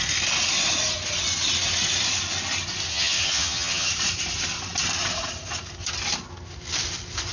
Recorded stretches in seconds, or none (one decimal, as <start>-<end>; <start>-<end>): 0.0-2.9; 3.9-7.3